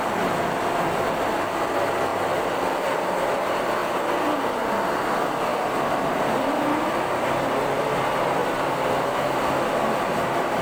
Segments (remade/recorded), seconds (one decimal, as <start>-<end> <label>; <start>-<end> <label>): 0.0-2.1 recorded; 2.1-2.6 remade; 2.6-8.4 recorded; 8.4-9.5 remade; 9.5-10.6 recorded